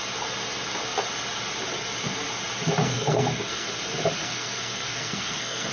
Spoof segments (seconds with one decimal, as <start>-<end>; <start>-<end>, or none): 2.8-3.7; 4.2-5.7